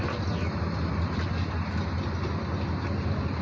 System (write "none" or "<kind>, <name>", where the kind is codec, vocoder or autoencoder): none